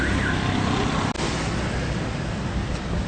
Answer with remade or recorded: recorded